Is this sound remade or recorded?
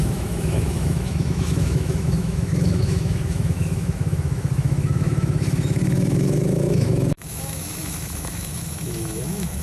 remade